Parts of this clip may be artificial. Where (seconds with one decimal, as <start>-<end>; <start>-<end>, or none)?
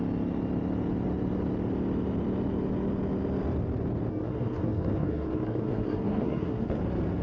4.1-6.8